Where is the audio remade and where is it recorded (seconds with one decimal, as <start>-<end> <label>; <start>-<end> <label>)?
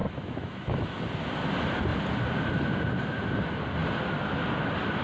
0.0-1.0 remade; 1.0-5.0 recorded